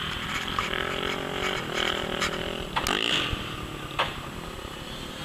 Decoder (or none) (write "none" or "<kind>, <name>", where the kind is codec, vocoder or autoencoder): none